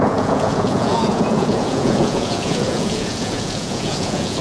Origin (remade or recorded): remade